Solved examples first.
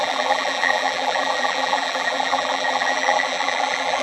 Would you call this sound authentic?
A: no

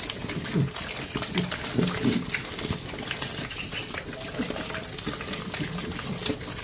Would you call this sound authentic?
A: yes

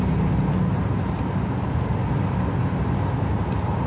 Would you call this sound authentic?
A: yes